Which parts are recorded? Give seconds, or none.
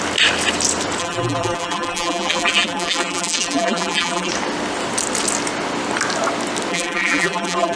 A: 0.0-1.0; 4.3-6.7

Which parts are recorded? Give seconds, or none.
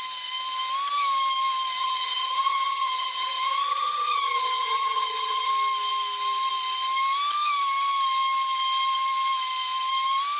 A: 0.0-1.8; 5.5-10.4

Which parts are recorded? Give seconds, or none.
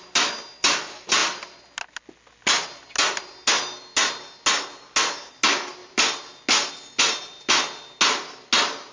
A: 0.0-8.9